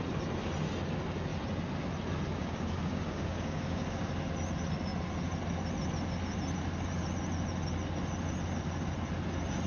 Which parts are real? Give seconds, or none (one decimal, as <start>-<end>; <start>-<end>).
0.0-2.4; 4.1-9.7